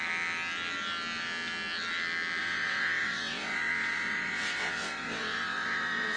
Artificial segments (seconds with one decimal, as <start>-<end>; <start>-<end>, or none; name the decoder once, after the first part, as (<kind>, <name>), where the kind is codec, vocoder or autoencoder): 2.4-6.2 (vocoder, WaveNeXt)